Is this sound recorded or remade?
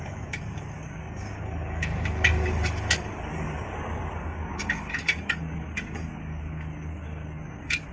remade